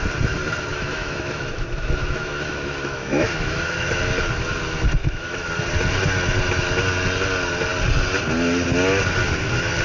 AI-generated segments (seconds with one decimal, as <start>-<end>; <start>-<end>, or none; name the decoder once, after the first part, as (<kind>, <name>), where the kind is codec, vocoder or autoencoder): 0.7-3.9 (autoencoder, DAC-VAE); 5.0-5.5